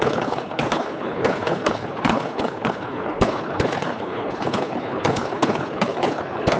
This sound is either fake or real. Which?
fake